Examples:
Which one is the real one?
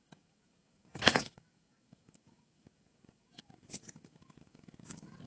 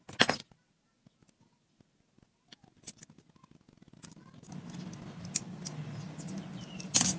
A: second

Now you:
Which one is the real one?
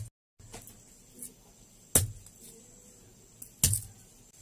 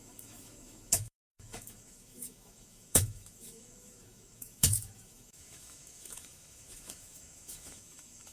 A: first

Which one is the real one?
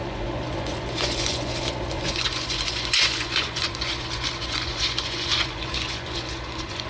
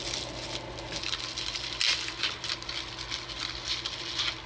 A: second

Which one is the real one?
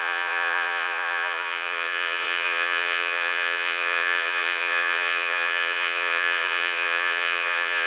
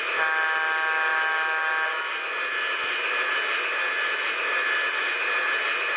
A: second